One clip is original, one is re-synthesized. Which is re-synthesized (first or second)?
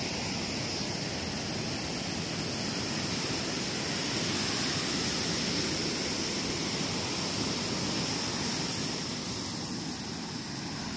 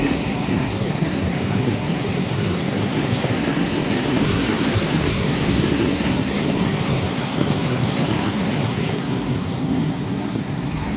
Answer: second